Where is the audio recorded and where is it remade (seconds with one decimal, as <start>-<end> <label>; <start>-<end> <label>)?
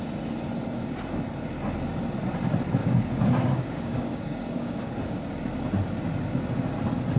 0.0-2.8 recorded; 2.8-5.3 remade; 5.3-7.2 recorded